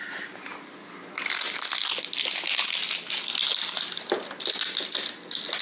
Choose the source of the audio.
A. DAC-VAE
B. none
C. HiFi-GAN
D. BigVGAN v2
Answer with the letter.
B